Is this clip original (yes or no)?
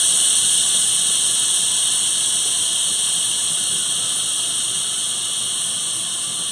yes